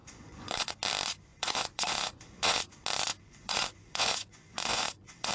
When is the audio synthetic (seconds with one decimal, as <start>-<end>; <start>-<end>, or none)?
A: 0.0-0.7; 1.3-2.6; 3.1-5.3